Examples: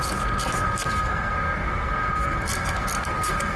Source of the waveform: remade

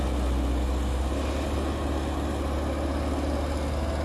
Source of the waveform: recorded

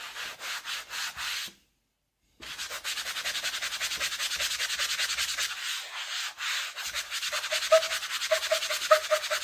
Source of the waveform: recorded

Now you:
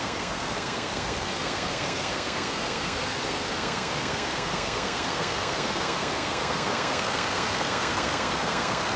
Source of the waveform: remade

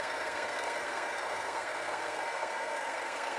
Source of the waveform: remade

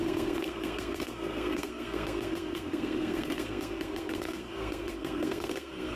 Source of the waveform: remade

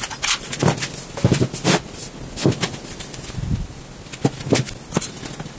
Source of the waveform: recorded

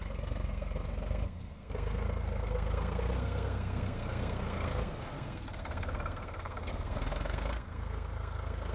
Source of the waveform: remade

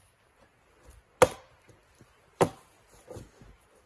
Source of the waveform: recorded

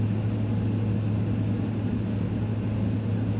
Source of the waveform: recorded